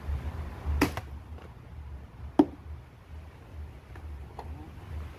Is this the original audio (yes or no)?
yes